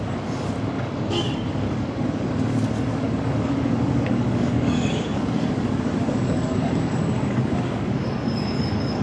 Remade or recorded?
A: remade